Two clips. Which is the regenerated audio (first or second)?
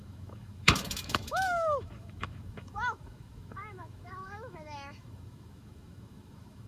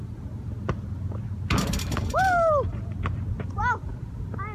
first